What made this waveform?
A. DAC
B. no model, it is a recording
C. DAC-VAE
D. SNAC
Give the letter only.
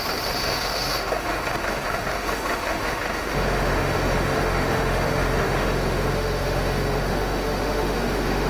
C